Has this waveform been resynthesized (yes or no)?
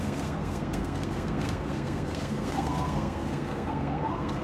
yes